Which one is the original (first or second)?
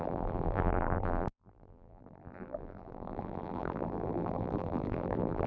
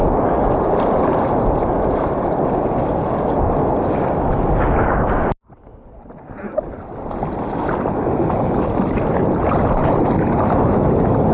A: second